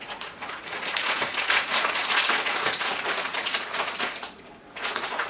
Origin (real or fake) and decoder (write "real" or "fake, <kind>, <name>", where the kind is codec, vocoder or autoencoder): fake, vocoder, Vocos